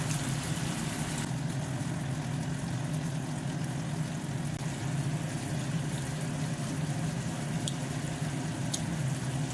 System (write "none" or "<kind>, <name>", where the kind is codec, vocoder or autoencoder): none